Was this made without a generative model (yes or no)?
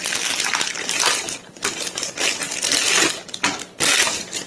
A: yes